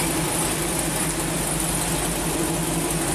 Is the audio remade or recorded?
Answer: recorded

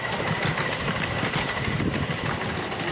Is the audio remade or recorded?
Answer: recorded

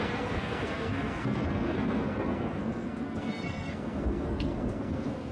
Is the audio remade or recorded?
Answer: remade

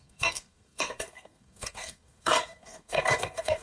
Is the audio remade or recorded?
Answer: remade